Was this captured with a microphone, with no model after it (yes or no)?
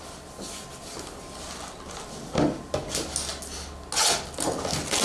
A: yes